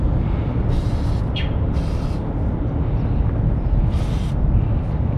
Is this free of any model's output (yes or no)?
yes